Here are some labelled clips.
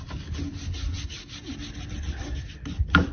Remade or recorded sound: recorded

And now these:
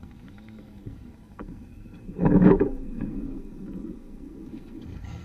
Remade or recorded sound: remade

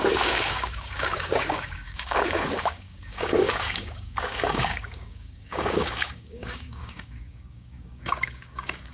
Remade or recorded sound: remade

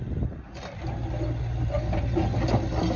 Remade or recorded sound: recorded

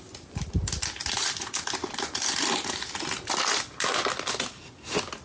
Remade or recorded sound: recorded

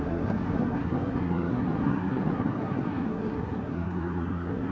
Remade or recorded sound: remade